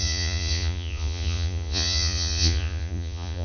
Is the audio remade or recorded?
remade